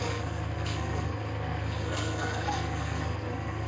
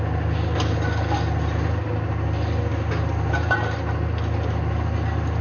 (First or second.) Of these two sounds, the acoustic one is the second